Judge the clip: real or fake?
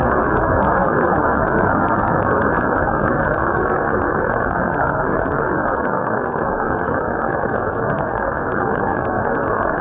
fake